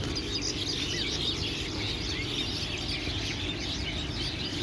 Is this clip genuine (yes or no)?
yes